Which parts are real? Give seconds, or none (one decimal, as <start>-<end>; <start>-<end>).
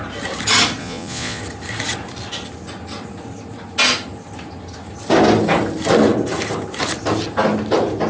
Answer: 0.0-0.8; 1.4-8.1